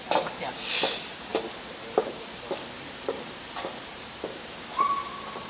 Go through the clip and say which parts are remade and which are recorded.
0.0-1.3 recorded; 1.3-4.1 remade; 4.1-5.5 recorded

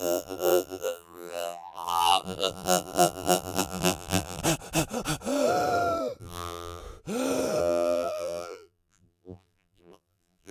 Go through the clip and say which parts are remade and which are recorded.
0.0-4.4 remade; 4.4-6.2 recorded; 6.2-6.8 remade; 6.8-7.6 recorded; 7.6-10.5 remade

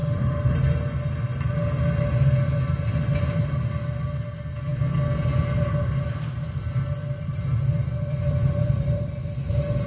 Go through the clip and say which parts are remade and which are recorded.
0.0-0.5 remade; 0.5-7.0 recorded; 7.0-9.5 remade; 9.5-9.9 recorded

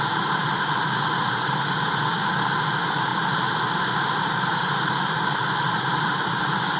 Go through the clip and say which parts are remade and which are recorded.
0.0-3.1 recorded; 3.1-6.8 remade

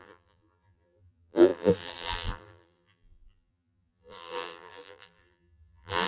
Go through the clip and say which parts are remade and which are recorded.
0.0-6.1 remade